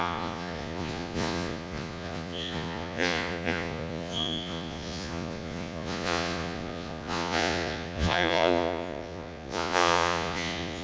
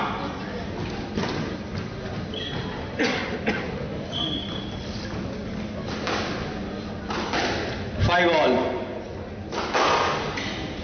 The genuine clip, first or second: second